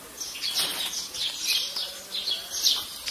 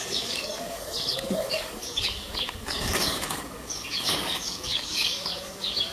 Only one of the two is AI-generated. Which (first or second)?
second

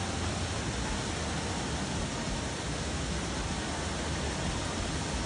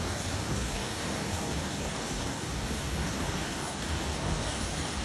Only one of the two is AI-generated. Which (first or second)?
second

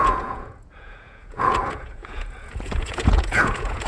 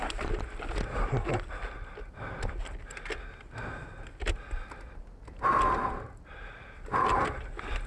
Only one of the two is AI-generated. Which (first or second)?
first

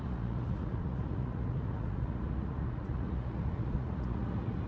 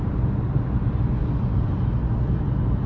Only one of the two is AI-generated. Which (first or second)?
first